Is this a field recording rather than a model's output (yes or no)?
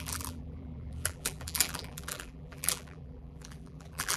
no